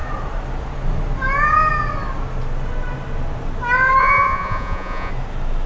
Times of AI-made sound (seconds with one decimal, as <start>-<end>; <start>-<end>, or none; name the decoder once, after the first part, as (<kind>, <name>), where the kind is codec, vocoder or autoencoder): 4.0-5.1 (vocoder, Vocos)